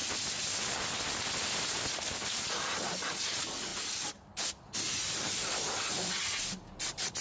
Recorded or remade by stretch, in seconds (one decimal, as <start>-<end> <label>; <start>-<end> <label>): 0.0-3.7 remade; 3.7-4.6 recorded; 4.6-7.2 remade